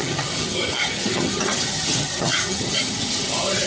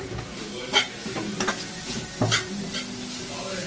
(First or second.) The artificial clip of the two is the first